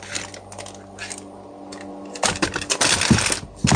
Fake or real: real